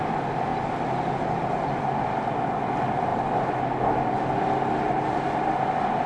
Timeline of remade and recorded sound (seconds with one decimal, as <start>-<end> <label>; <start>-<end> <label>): 0.0-6.1 recorded